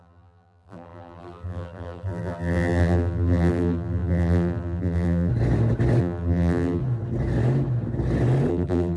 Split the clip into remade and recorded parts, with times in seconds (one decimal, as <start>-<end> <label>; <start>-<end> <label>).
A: 0.0-5.3 remade; 5.3-6.0 recorded; 6.0-6.8 remade; 6.8-8.5 recorded; 8.5-9.0 remade